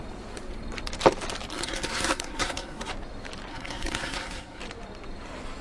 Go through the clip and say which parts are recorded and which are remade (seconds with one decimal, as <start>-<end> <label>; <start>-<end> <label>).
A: 0.0-1.5 recorded; 1.5-2.9 remade; 2.9-3.5 recorded; 3.5-4.6 remade; 4.6-5.6 recorded